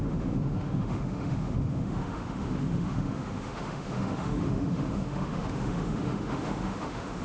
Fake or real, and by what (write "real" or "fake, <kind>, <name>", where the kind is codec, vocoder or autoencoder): fake, autoencoder, DAC-VAE